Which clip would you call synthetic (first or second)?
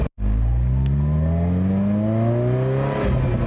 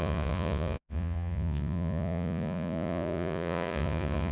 second